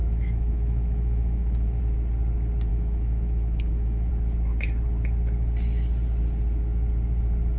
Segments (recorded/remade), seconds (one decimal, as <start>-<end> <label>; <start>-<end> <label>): 0.0-1.8 remade; 1.8-2.7 recorded; 2.7-4.1 remade; 4.1-7.6 recorded